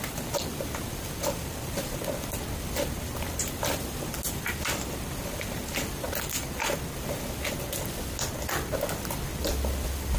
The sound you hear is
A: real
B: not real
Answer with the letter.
A